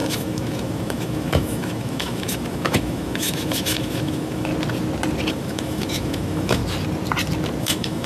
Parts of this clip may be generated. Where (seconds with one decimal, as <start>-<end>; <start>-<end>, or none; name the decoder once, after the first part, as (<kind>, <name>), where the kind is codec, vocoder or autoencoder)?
0.0-4.5 (autoencoder, DAC-VAE); 5.3-6.6; 7.6-8.1